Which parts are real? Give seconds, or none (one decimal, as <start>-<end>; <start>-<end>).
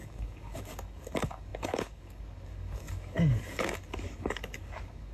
none